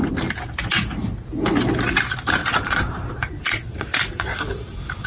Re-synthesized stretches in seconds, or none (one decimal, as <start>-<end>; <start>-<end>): 2.4-5.1

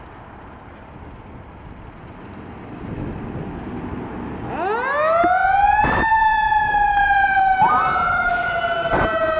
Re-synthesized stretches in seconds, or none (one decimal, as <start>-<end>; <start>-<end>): none

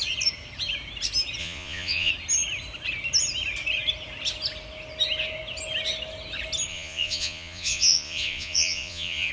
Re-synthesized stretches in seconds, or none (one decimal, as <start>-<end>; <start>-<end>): 1.4-2.1; 6.7-9.3

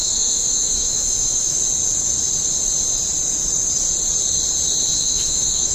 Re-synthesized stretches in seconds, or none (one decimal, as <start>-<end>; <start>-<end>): 0.0-1.6; 5.0-5.7

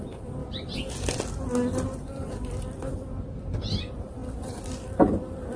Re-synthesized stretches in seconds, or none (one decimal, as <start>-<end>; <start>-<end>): none

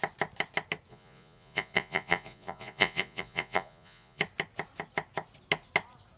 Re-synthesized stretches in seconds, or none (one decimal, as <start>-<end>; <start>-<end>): 0.9-4.2

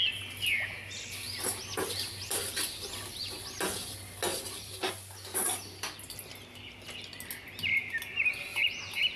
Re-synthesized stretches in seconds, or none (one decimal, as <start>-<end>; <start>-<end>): 4.3-4.9

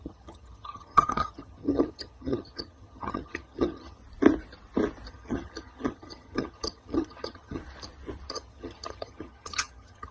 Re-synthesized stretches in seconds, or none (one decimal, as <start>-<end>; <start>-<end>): 0.0-4.0; 5.1-7.6; 8.3-10.1